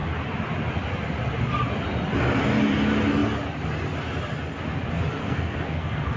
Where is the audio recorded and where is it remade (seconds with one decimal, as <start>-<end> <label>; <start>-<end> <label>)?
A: 0.0-5.2 recorded; 5.2-6.2 remade